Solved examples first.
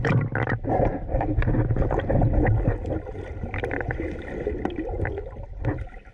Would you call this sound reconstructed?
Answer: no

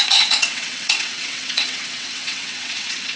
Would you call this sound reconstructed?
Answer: yes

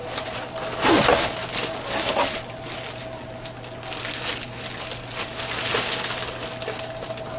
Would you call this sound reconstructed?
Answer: no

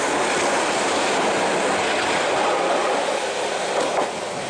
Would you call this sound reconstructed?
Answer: no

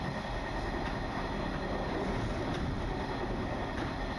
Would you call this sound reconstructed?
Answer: no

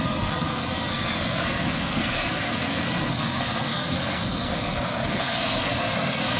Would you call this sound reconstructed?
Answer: yes